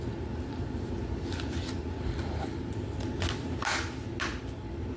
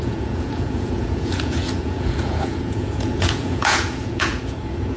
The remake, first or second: second